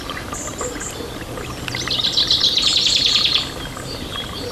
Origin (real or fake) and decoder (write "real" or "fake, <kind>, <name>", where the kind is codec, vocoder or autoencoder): real